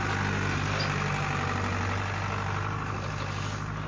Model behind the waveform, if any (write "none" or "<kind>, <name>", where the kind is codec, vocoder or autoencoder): none